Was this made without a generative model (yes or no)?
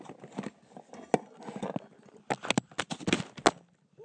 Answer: yes